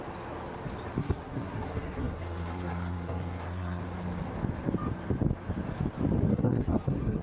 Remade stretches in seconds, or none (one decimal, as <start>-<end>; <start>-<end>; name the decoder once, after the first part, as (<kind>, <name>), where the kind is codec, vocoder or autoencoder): 1.0-3.8 (codec, SNAC); 6.3-7.2